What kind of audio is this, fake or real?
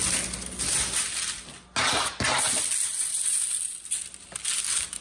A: real